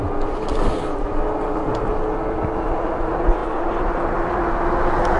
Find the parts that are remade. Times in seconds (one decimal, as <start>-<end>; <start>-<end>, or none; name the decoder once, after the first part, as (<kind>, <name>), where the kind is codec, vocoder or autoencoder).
none